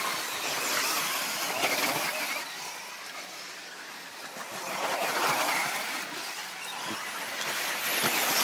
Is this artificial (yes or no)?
no